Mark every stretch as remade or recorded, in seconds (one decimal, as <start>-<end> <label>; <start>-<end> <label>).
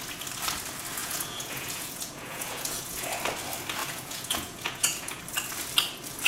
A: 0.0-1.0 recorded; 1.0-3.2 remade; 3.2-3.8 recorded; 3.8-5.2 remade; 5.2-6.3 recorded